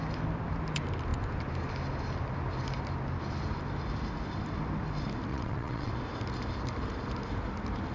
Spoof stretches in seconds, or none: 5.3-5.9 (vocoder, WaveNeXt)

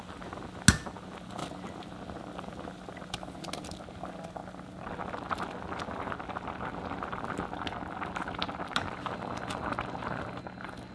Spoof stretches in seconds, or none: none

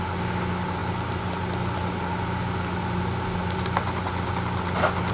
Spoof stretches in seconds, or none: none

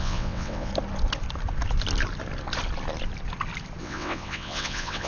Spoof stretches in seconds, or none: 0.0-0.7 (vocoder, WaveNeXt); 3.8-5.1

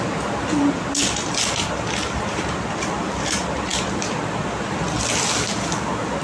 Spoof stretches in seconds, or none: none

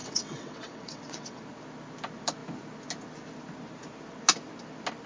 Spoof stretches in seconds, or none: 0.0-1.4 (vocoder, WaveNeXt)

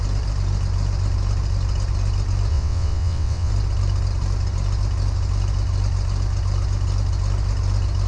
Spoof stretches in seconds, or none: 2.5-3.5 (vocoder, WaveNeXt)

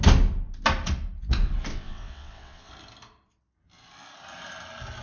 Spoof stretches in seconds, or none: 1.7-2.7 (vocoder, WaveNeXt)